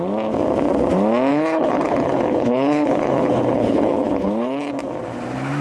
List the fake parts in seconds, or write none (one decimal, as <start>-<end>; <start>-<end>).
1.3-4.7

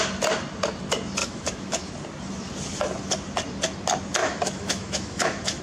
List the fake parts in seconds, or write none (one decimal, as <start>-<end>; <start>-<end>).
1.2-1.9; 4.2-5.6

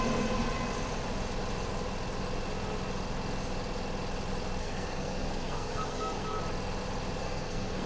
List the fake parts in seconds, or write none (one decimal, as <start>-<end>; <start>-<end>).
4.6-6.4; 7.2-7.9

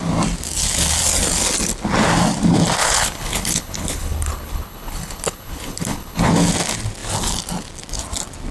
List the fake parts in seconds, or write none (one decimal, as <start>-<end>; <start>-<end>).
2.8-6.3

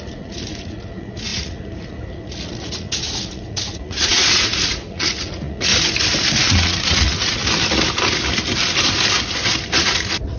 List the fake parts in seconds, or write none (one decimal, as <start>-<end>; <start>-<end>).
0.0-5.7; 6.4-7.4; 9.8-10.4

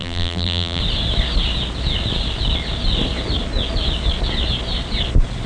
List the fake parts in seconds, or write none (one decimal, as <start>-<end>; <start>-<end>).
0.0-0.8

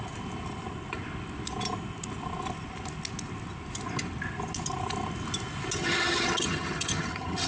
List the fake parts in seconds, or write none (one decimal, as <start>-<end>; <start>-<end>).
5.8-7.5

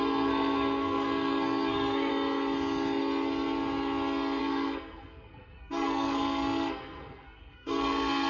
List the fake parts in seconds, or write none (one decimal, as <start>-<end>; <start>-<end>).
0.0-2.1; 4.4-8.3